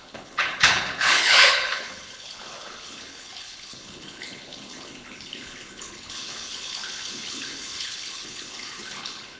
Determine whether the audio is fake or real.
fake